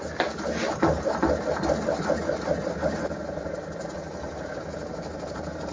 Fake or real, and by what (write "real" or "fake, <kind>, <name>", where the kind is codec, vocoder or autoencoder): real